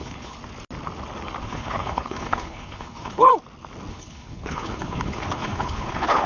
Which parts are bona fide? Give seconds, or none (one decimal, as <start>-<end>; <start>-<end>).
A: 0.4-1.4; 3.3-3.9